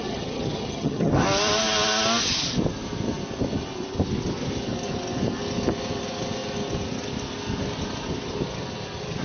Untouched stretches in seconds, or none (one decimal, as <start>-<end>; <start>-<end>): 1.1-9.2